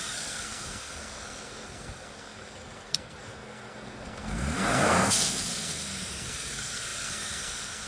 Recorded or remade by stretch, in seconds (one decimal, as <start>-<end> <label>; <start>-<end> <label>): 0.0-7.9 remade